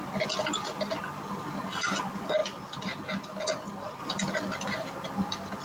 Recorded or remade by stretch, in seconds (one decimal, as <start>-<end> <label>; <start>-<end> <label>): 0.0-5.6 recorded